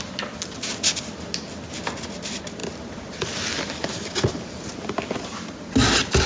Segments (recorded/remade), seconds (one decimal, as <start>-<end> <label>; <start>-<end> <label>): 0.0-2.6 recorded; 2.6-3.8 remade; 3.8-6.3 recorded

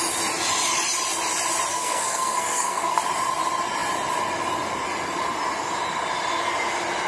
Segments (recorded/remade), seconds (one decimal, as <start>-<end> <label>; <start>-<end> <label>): 0.0-1.7 recorded; 1.7-3.0 remade; 3.0-7.1 recorded

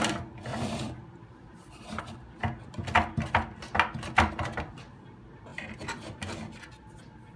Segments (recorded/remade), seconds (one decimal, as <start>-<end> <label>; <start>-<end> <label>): 0.0-0.5 recorded; 0.5-2.0 remade; 2.0-5.5 recorded; 5.5-6.2 remade; 6.2-7.4 recorded

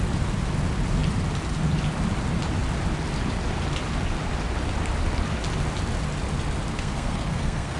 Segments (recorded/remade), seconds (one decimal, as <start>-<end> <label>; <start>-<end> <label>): 0.0-6.7 recorded; 6.7-7.8 remade

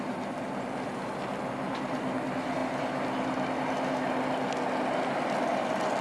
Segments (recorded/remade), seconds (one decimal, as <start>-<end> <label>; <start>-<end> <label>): 0.0-6.0 recorded

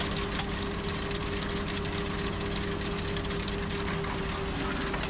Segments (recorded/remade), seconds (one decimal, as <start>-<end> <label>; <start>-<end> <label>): 0.0-5.1 recorded